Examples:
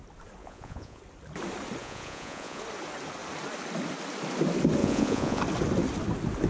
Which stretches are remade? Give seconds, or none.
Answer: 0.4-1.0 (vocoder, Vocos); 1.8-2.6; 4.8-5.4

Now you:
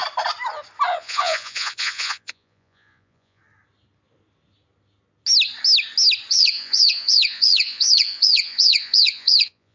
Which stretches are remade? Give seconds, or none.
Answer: 0.9-3.4 (vocoder, Vocos); 6.3-9.7

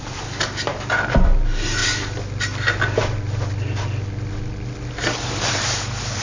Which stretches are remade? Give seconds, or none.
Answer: none

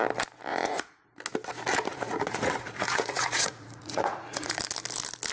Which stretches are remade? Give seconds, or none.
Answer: 0.5-1.0 (vocoder, Vocos); 1.9-4.6

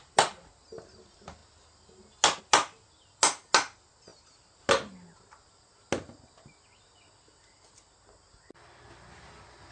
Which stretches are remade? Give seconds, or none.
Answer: none

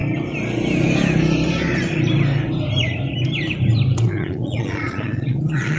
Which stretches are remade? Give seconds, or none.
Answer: 4.0-5.8 (vocoder, Vocos)

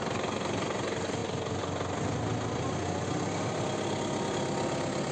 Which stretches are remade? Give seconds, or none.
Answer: none